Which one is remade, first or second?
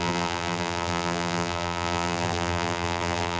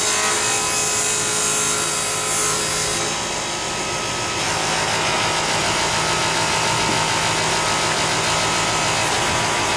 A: first